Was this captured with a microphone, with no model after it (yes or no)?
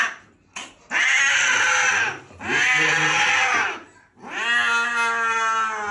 yes